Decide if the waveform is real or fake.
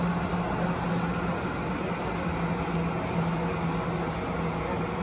real